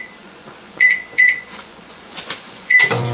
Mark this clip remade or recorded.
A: remade